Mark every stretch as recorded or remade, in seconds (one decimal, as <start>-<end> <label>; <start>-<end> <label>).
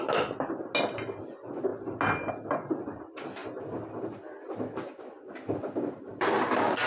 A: 0.0-6.9 recorded